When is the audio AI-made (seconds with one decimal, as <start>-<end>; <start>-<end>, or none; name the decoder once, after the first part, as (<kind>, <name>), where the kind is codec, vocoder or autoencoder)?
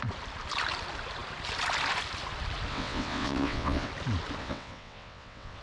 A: 2.7-3.9 (vocoder, WaveNeXt); 4.4-5.6